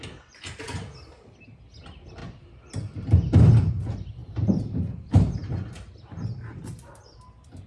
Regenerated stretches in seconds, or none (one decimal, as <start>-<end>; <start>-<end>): 4.2-5.5